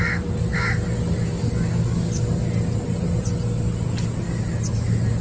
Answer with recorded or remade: recorded